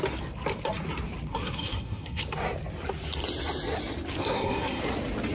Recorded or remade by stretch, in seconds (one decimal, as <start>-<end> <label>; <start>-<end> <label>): 0.0-1.3 recorded; 1.3-2.2 remade; 2.2-4.2 recorded; 4.2-4.8 remade; 4.8-5.3 recorded